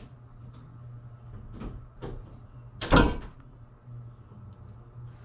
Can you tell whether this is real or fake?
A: real